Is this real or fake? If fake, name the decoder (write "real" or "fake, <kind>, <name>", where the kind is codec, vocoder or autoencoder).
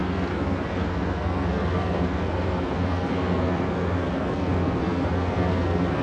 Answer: fake, codec, SNAC